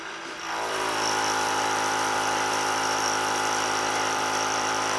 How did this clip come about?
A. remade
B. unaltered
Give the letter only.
A